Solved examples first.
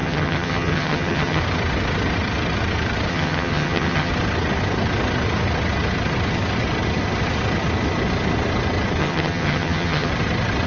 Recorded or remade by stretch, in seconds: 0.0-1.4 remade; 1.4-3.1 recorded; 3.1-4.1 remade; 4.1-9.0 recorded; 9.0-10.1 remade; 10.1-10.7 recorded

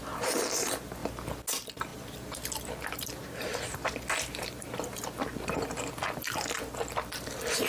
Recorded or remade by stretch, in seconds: 0.0-1.0 remade; 1.0-1.5 recorded; 1.5-7.7 remade